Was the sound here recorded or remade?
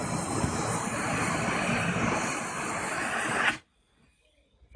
recorded